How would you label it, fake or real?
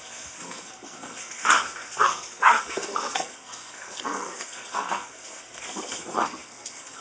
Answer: fake